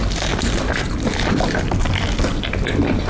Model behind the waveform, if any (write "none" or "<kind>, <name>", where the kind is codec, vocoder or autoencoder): none